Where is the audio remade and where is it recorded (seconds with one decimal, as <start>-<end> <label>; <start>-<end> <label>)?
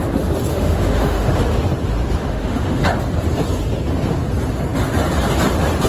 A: 0.0-0.5 recorded; 0.5-1.3 remade; 1.3-2.2 recorded; 2.2-2.8 remade; 2.8-5.9 recorded